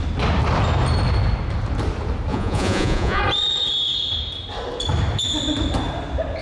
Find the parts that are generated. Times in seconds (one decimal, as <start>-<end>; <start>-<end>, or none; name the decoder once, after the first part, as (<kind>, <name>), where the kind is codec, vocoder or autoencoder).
2.3-3.2 (vocoder, Vocos)